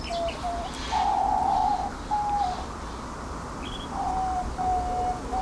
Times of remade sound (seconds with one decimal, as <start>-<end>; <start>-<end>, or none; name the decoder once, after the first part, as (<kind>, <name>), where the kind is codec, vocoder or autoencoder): 0.0-1.6 (vocoder, BigVGAN v2); 3.2-4.7